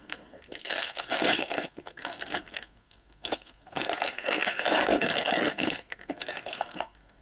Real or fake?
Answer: fake